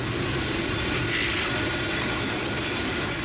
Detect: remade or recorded recorded